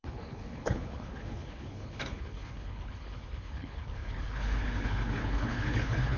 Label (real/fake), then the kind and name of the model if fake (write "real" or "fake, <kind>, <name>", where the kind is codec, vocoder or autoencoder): fake, codec, HILCodec